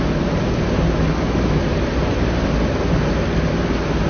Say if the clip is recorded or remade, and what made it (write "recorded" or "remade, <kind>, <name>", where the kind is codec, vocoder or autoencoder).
recorded